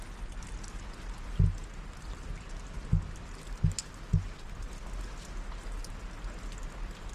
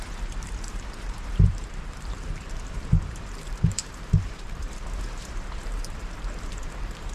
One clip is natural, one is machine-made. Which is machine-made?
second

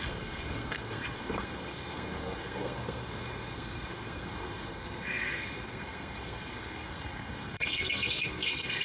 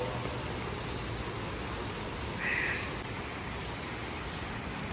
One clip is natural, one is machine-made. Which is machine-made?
first